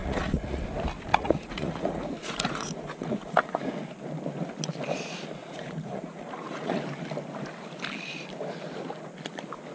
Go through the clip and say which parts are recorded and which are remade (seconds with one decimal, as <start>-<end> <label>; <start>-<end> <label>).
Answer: 0.0-0.6 remade; 0.6-1.1 recorded; 1.1-3.6 remade; 3.6-5.4 recorded; 5.4-6.8 remade; 6.8-9.7 recorded